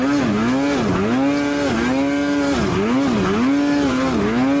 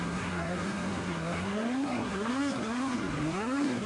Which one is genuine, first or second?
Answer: first